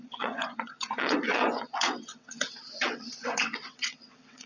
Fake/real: fake